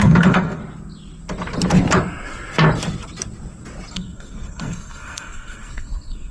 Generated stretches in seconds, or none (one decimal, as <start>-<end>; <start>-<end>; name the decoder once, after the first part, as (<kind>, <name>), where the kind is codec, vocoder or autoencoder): 0.0-0.6 (codec, SNAC); 3.9-6.3